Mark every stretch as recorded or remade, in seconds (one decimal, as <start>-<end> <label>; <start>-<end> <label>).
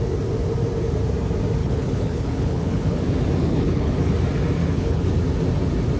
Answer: 0.0-1.6 recorded; 1.6-3.0 remade; 3.0-3.4 recorded; 3.4-4.1 remade; 4.1-4.6 recorded; 4.6-5.1 remade; 5.1-6.0 recorded